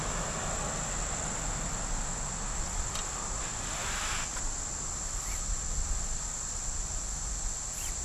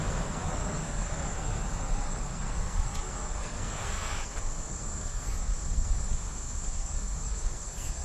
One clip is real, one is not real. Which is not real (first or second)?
second